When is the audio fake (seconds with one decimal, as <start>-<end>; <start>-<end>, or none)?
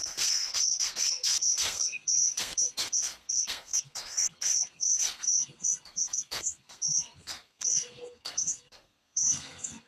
0.0-9.9